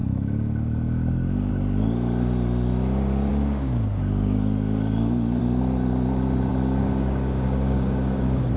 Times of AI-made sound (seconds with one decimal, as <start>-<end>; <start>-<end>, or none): 0.0-1.5; 3.3-5.4; 6.5-8.6